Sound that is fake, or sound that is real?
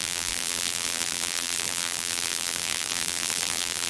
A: fake